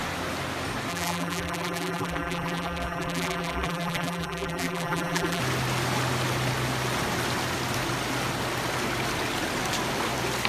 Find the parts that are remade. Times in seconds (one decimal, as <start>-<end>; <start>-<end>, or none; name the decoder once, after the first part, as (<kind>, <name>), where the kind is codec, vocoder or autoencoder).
0.9-5.4 (vocoder, BigVGAN v2)